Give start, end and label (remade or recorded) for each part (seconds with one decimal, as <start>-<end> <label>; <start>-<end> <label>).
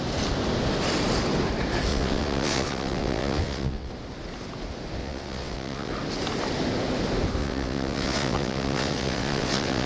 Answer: 0.0-1.9 recorded; 1.9-3.9 remade; 3.9-5.0 recorded; 5.0-5.9 remade; 5.9-7.4 recorded; 7.4-9.9 remade